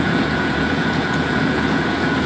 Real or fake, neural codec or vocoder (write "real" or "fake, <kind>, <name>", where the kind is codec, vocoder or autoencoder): fake, vocoder, Vocos